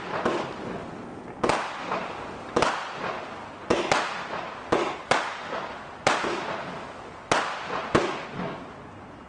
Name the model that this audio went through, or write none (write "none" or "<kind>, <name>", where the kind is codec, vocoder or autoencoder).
none